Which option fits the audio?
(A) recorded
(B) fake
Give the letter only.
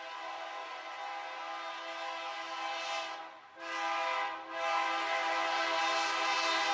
A